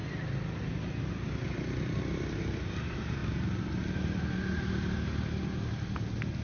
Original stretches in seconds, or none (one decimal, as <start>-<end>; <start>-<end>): 0.0-6.4